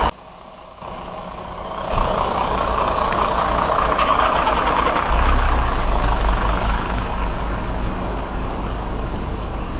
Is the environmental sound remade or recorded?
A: remade